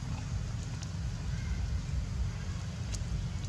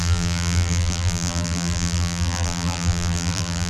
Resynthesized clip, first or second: second